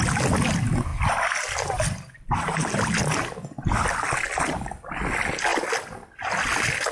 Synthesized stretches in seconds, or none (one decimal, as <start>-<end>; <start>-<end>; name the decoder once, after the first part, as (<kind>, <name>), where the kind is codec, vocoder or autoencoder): none